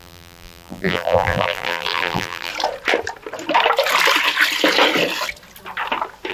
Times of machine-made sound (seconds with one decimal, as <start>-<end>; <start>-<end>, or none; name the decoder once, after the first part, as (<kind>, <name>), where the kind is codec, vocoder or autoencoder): 0.0-2.5 (vocoder, BigVGAN v2)